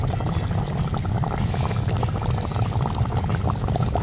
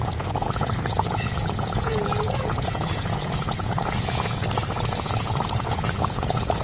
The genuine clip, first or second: first